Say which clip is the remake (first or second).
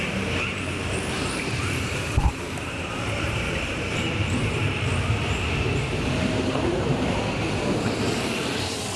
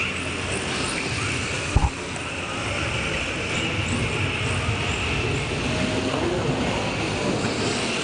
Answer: first